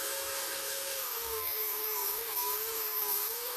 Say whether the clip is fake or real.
fake